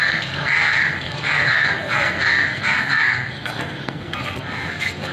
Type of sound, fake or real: fake